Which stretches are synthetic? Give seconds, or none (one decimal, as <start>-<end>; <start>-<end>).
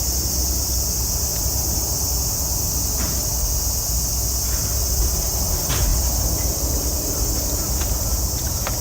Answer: none